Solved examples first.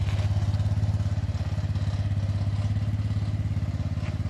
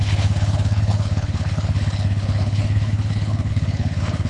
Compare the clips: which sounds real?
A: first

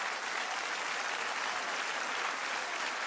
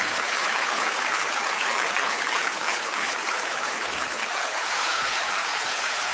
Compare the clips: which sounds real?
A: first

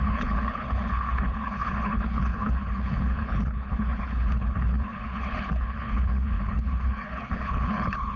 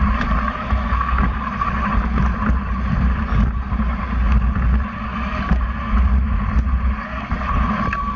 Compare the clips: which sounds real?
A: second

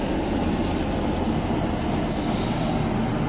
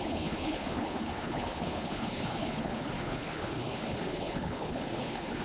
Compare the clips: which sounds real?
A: first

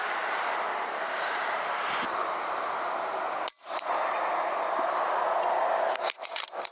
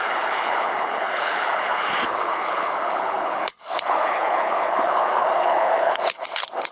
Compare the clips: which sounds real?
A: first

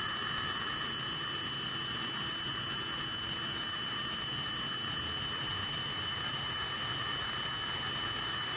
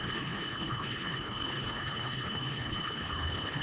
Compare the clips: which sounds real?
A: first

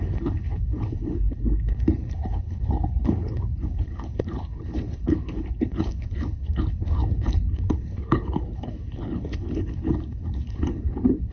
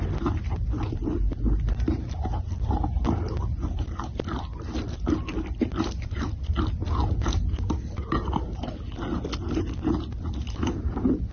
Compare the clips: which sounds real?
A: second